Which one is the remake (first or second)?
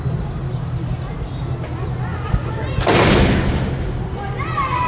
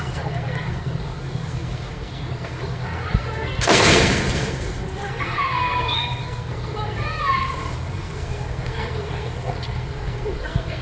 second